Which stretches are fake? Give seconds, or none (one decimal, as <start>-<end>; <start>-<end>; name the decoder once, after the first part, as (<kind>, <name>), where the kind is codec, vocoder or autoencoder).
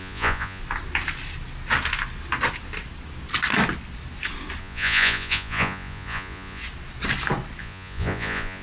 0.0-0.6 (vocoder, Vocos); 4.6-6.6; 7.6-8.6